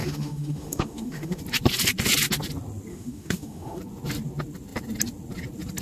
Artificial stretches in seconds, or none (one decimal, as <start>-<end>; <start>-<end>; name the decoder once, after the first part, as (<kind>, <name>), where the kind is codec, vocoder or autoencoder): 0.0-1.4 (autoencoder, DAC-VAE); 2.9-3.8